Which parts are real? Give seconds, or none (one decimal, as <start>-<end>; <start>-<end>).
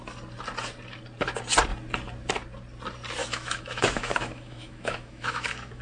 0.0-3.2